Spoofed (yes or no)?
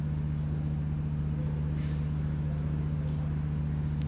no